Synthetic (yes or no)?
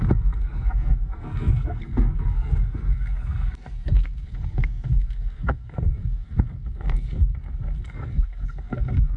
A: yes